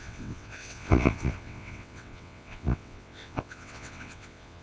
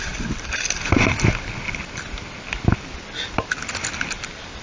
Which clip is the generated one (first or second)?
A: first